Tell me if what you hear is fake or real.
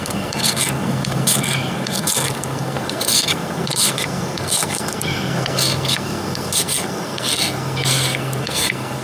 fake